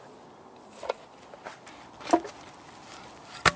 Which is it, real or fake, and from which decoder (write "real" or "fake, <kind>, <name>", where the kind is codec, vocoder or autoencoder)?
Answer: real